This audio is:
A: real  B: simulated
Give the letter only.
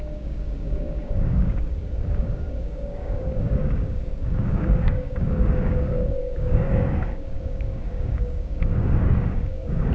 B